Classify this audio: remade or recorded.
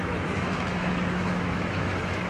remade